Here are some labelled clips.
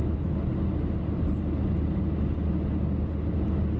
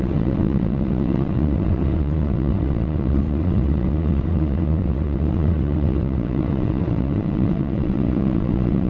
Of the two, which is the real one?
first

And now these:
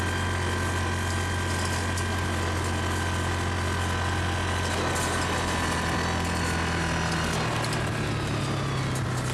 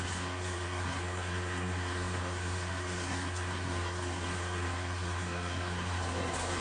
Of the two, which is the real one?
first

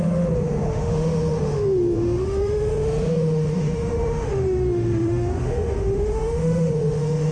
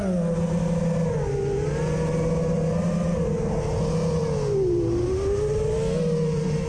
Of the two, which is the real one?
second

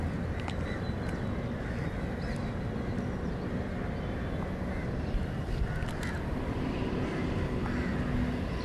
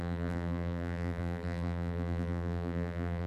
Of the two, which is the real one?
first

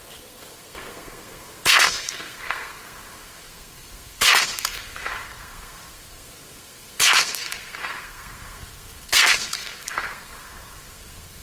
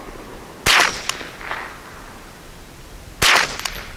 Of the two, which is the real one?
second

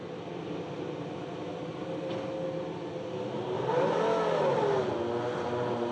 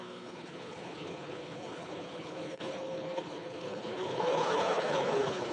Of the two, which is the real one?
first